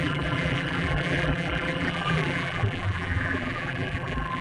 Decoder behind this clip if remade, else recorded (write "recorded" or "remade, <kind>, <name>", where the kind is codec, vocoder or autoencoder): remade, vocoder, BigVGAN v2